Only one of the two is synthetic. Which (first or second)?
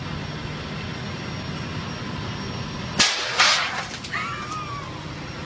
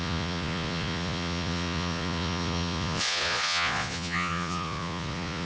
second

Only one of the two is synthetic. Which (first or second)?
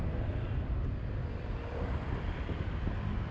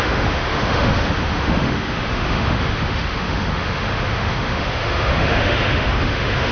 second